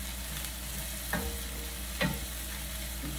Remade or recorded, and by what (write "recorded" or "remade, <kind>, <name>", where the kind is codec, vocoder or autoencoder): recorded